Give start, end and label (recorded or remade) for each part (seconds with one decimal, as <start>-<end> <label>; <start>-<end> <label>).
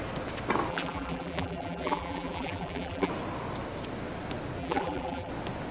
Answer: 0.0-0.7 recorded; 0.7-3.1 remade; 3.1-4.6 recorded; 4.6-5.3 remade; 5.3-5.7 recorded